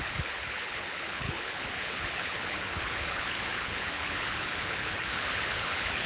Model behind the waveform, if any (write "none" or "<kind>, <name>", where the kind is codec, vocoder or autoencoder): codec, HILCodec